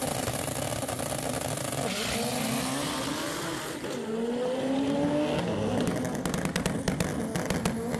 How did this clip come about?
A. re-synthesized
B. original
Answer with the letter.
B